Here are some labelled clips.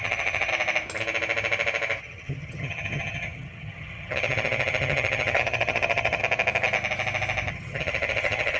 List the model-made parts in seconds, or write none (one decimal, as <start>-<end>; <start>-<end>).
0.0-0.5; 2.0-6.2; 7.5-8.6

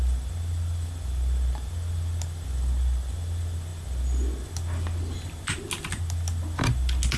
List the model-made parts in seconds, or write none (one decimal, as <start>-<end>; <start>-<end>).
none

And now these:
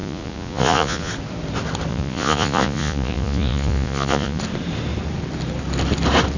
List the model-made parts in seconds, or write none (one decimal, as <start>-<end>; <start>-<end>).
0.0-1.1; 1.9-4.4

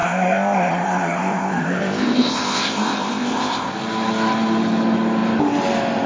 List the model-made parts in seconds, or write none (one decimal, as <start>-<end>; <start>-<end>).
0.0-3.7

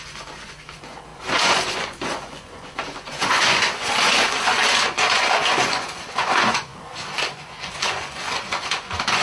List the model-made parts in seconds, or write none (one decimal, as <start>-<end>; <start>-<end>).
0.0-9.2

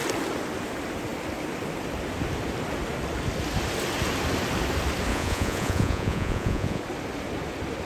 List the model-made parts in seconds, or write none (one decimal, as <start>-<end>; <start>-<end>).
5.1-6.8

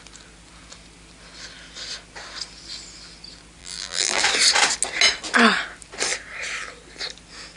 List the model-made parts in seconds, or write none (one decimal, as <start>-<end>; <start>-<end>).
3.6-4.2

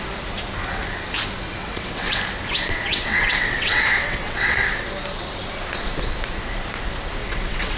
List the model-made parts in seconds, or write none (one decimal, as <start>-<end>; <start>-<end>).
1.6-2.2; 2.9-4.9; 7.2-7.8